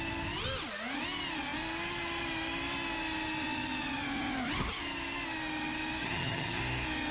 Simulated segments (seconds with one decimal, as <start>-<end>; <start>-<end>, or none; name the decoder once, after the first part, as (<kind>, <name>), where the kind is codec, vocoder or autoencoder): 6.0-6.6 (vocoder, HiFi-GAN)